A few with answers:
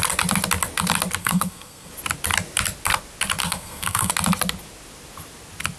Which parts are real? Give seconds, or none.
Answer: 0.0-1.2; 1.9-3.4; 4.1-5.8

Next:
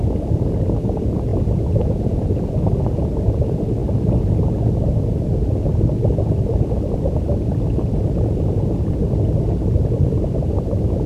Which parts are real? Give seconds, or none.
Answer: 0.0-1.3; 2.5-11.1